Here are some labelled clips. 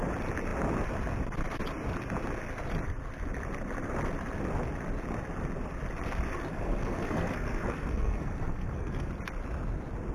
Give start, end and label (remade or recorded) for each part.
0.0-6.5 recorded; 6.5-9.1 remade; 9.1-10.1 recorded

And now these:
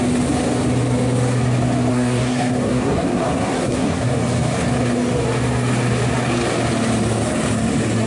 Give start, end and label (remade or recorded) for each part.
0.0-1.9 recorded; 1.9-4.1 remade; 4.1-8.1 recorded